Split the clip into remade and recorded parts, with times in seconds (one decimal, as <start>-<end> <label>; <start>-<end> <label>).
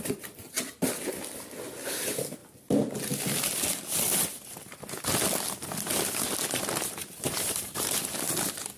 0.0-7.0 recorded; 7.0-8.1 remade; 8.1-8.8 recorded